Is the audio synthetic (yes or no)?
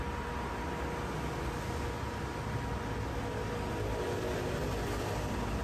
no